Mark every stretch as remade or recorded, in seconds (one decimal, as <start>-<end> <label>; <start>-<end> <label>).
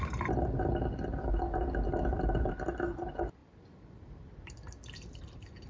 0.0-5.7 recorded